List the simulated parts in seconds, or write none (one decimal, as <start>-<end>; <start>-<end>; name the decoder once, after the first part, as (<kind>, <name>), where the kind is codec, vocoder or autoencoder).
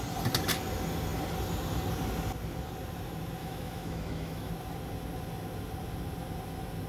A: 3.4-4.5 (autoencoder, DAC-VAE)